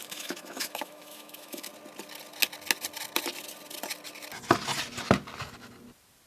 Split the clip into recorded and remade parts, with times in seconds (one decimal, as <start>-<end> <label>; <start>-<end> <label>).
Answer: 0.0-1.7 remade; 1.7-6.3 recorded